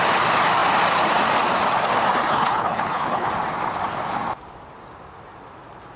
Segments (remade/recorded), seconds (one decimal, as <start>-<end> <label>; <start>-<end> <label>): 0.0-2.3 recorded; 2.3-3.3 remade; 3.3-6.0 recorded